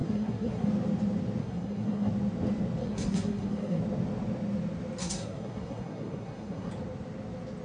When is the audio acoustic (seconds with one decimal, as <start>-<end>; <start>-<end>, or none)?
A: 0.7-1.4; 2.1-2.8; 3.8-5.0; 6.7-7.6